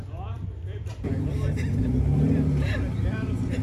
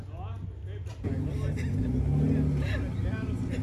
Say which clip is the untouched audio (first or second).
second